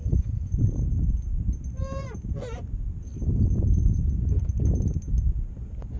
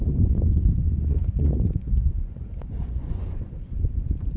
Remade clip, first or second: second